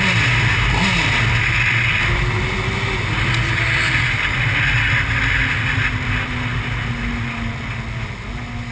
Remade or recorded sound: recorded